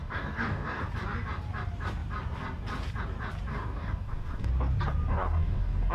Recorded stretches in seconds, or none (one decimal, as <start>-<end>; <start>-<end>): 0.8-3.5; 4.5-5.1